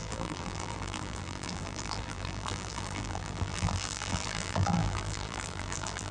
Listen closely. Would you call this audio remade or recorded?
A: remade